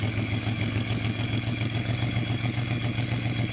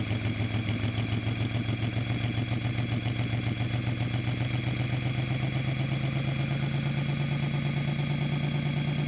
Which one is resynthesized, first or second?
first